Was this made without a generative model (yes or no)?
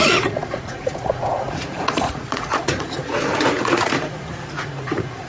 no